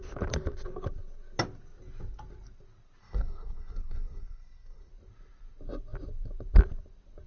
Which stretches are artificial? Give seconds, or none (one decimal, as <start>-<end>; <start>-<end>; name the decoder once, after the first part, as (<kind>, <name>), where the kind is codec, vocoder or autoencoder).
3.0-4.9 (codec, SNAC)